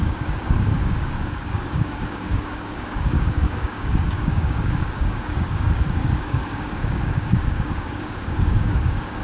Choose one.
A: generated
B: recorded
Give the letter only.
A